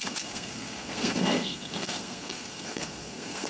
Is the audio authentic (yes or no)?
no